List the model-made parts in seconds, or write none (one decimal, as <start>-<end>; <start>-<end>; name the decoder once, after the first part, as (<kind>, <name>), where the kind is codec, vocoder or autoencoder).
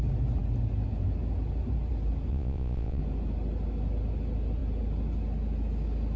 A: 2.3-3.0 (vocoder, Vocos)